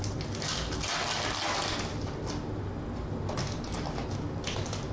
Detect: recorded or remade recorded